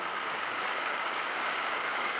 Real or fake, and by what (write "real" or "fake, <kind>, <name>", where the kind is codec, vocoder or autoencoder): fake, codec, DAC